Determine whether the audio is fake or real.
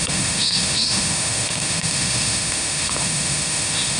fake